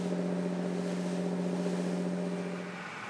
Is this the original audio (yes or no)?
yes